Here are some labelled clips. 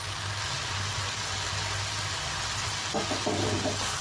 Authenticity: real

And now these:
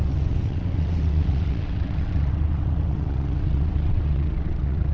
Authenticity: fake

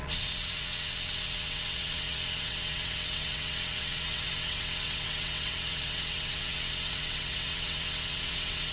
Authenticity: fake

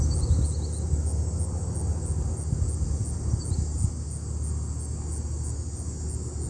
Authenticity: real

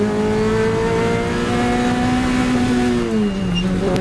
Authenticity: real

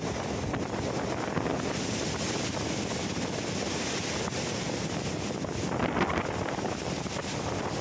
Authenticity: real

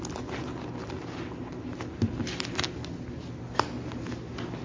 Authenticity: real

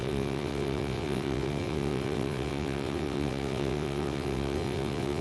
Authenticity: fake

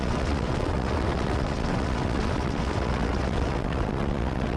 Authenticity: fake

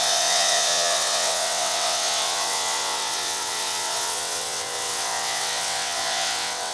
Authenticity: fake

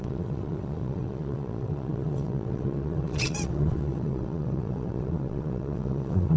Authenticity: fake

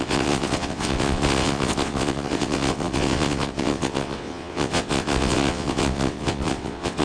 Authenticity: fake